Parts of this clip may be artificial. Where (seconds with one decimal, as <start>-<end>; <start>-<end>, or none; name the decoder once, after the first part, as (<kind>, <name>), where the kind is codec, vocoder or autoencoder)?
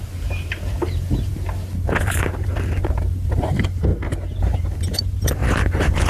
0.0-1.3 (vocoder, BigVGAN v2); 3.4-3.9; 4.4-6.1